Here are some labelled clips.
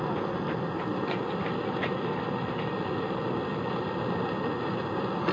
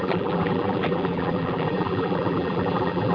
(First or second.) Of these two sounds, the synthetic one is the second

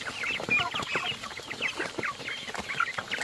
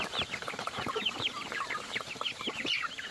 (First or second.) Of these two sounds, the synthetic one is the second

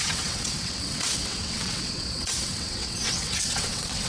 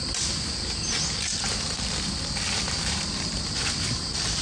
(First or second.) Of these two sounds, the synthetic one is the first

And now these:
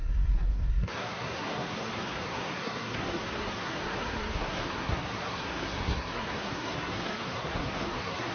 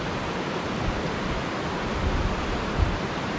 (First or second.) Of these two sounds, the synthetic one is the first